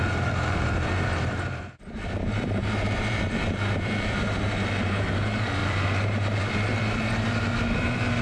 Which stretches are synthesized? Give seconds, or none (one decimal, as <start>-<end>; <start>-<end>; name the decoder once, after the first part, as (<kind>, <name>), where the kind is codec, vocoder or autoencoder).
0.0-8.2 (vocoder, BigVGAN v2)